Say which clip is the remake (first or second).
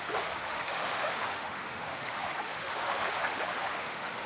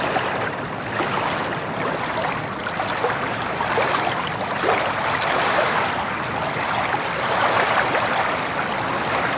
first